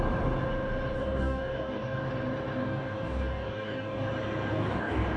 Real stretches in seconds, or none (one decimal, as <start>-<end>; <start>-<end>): 0.0-1.0; 2.1-2.6; 4.1-4.5